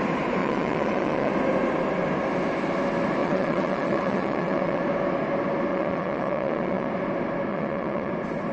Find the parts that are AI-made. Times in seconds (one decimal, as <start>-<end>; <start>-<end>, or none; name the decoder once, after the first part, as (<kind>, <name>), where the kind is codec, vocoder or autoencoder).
0.4-1.3 (vocoder, WaveNeXt); 3.2-4.8; 5.7-6.9; 7.5-8.1